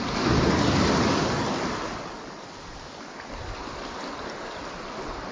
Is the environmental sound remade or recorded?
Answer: recorded